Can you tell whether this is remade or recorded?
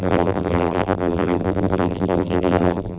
remade